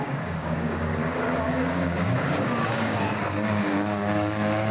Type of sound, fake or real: fake